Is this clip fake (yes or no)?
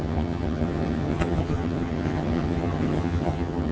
yes